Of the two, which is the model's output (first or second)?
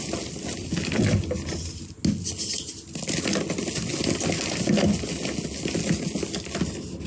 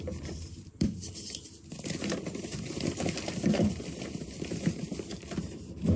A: second